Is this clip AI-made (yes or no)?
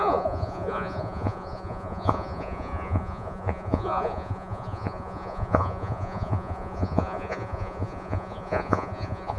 yes